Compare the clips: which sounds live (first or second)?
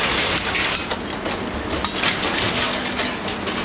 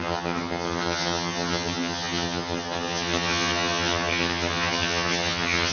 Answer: first